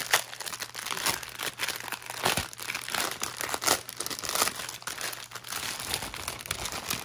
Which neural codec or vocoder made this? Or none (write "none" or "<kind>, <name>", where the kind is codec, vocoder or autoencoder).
none